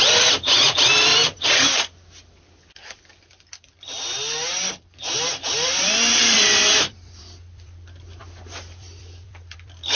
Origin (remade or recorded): remade